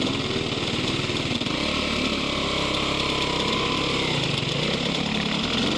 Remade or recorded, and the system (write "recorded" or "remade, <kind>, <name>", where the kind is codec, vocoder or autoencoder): recorded